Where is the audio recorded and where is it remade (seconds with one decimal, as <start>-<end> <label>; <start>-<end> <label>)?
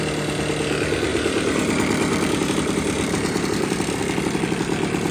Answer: 0.0-1.1 recorded; 1.1-4.0 remade; 4.0-5.1 recorded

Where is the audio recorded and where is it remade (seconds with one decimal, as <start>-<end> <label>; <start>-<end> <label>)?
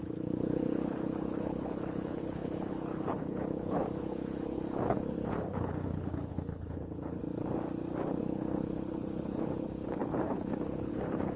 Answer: 0.0-7.2 remade; 7.2-8.2 recorded; 8.2-11.4 remade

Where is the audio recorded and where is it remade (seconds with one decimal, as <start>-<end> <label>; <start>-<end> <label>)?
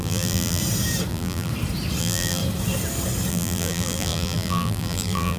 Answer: 0.0-0.6 remade; 0.6-1.1 recorded; 1.1-1.5 remade; 1.5-2.0 recorded; 2.0-2.4 remade; 2.4-3.3 recorded; 3.3-5.4 remade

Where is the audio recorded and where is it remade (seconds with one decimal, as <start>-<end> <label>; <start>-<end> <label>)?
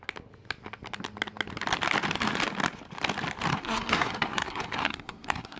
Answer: 0.0-3.5 recorded; 3.5-5.6 remade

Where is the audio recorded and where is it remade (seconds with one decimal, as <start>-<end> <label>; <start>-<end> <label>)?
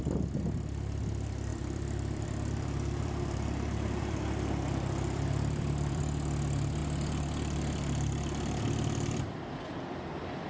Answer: 0.0-1.5 recorded; 1.5-6.0 remade; 6.0-6.8 recorded; 6.8-10.5 remade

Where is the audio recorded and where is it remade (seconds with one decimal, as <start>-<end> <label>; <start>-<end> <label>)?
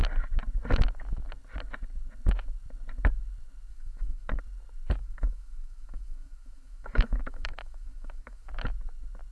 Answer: 0.0-3.7 recorded; 3.7-4.4 remade; 4.4-5.0 recorded; 5.0-8.5 remade; 8.5-9.3 recorded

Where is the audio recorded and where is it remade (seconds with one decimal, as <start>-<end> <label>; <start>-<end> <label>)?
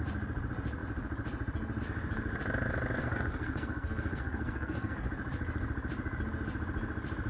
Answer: 0.0-3.0 recorded; 3.0-5.1 remade; 5.1-7.3 recorded